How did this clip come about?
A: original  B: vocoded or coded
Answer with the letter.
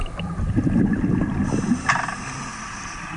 A